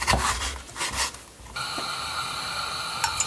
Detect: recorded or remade recorded